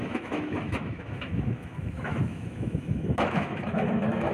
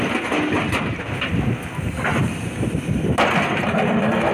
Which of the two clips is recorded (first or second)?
second